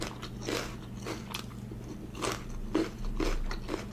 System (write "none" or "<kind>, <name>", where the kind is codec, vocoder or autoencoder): none